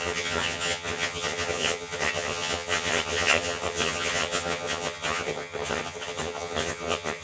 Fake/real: fake